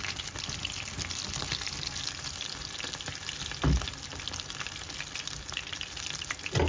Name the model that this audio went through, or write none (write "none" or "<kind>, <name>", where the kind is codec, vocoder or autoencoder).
none